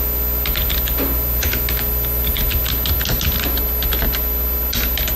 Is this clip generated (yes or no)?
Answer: no